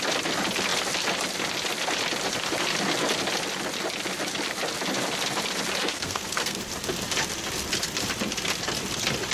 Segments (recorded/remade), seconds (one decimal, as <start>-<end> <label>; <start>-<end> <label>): 0.0-5.8 recorded; 5.8-6.6 remade; 6.6-9.3 recorded